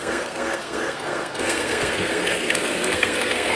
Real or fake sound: fake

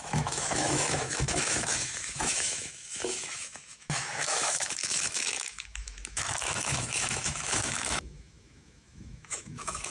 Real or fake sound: fake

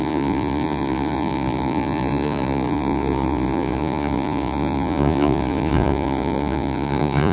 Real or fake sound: fake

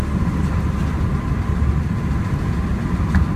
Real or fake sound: real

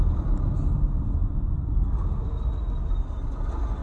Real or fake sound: real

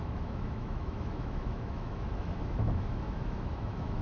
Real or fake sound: fake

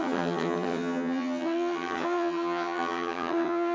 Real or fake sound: fake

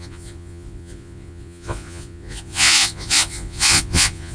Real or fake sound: fake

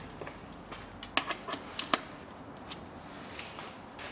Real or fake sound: real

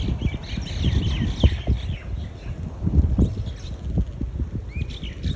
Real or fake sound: real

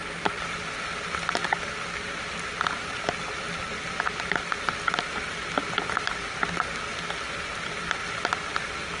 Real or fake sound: real